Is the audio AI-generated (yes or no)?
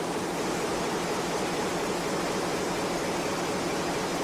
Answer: no